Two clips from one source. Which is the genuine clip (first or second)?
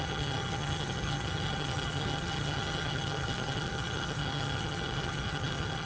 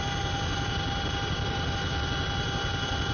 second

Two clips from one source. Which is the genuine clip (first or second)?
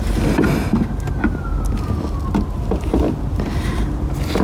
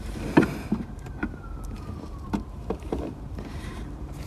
first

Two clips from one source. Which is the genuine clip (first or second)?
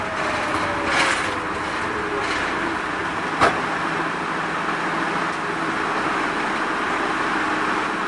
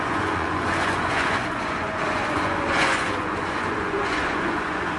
first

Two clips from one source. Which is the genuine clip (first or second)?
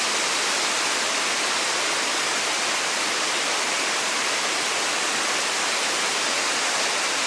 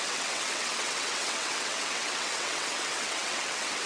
first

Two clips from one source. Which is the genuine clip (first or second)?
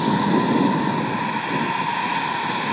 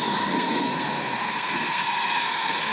first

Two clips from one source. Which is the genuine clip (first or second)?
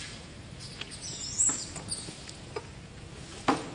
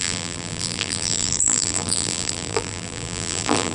first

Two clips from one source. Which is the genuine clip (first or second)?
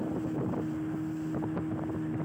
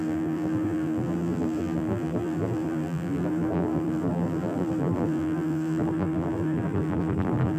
first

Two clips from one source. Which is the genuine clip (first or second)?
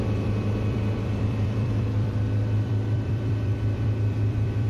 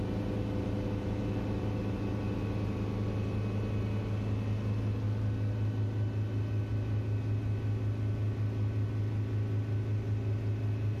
second